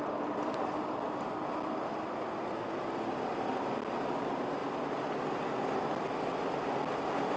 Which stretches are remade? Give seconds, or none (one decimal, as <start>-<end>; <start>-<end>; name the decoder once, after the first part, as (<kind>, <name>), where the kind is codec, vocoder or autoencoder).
none